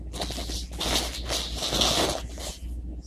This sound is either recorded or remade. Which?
recorded